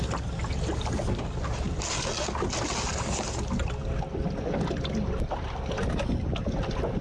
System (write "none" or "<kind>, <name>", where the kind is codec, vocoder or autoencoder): none